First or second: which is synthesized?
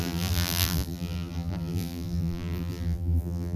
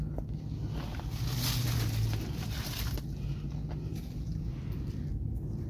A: first